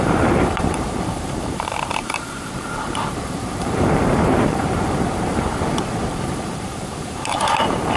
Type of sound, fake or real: fake